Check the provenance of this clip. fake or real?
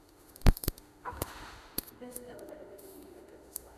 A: fake